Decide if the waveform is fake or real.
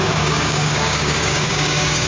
fake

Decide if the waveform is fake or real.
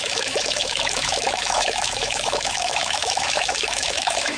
fake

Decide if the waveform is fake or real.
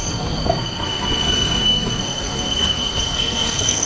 fake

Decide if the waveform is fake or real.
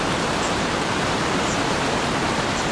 fake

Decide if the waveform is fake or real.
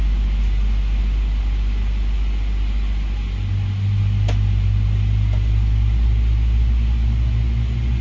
real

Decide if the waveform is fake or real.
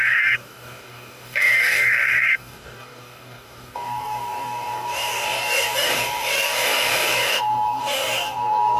fake